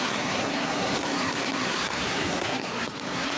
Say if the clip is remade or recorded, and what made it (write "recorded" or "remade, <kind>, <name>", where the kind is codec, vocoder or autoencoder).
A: remade, codec, SNAC